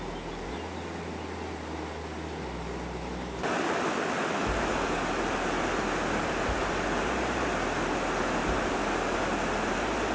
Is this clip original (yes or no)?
yes